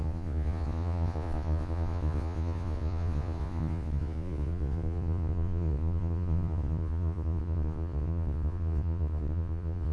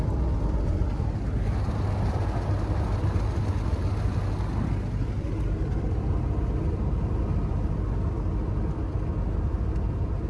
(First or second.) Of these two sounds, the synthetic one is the first